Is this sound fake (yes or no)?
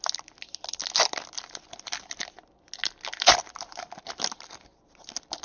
no